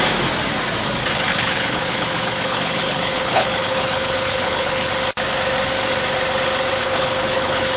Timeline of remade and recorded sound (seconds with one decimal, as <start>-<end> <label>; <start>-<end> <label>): 0.0-1.3 recorded; 1.3-4.9 remade; 4.9-6.8 recorded; 6.8-7.8 remade